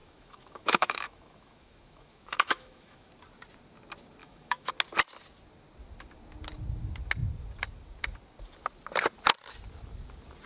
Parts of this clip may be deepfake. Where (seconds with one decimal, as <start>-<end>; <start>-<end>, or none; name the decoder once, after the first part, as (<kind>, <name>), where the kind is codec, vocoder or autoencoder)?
0.0-3.1 (autoencoder, DAC-VAE); 4.2-4.7